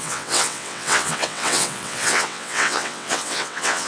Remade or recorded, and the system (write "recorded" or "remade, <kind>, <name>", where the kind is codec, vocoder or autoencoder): remade, vocoder, WaveNeXt